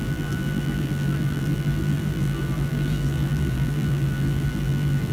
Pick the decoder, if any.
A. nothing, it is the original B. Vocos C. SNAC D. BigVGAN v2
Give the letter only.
D